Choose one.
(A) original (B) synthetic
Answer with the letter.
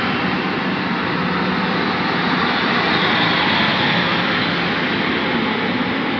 A